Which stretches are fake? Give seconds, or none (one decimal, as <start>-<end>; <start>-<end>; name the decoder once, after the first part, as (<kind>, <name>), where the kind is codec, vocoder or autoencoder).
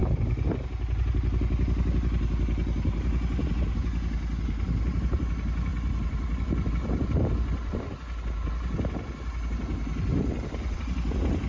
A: 5.7-7.8 (vocoder, BigVGAN v2); 10.1-10.8